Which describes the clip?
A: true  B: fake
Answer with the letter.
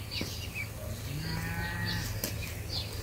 A